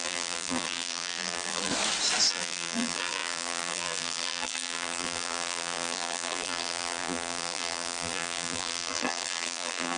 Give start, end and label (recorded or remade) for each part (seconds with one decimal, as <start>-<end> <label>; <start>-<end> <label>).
0.0-1.7 remade; 1.7-2.3 recorded; 2.3-10.0 remade